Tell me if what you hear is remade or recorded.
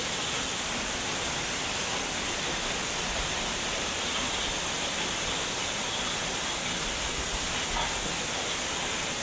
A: remade